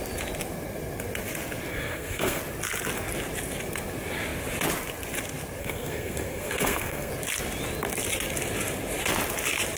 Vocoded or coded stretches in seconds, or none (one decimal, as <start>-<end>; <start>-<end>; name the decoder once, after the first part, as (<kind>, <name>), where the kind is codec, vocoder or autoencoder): 1.7-2.4 (codec, SNAC); 5.6-7.1